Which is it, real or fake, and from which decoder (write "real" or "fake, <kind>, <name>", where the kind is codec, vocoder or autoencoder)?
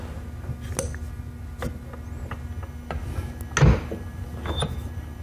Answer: real